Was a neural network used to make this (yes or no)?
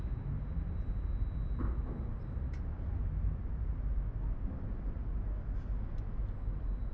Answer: no